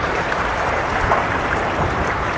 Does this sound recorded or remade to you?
remade